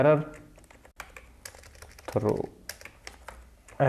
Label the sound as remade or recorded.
recorded